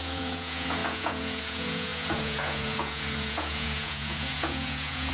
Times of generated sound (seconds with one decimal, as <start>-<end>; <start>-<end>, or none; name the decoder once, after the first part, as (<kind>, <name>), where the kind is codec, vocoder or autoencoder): 0.0-5.1 (vocoder, Vocos)